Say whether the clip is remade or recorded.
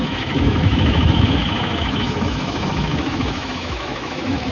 remade